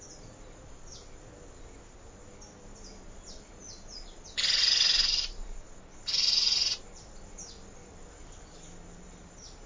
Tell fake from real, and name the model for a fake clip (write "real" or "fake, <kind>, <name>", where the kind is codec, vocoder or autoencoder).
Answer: real